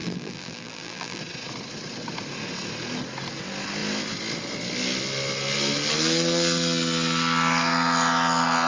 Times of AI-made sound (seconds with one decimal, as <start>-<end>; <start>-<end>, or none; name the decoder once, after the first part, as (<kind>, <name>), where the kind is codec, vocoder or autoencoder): 0.0-1.2 (vocoder, BigVGAN v2)